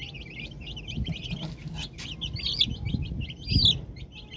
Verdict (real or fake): real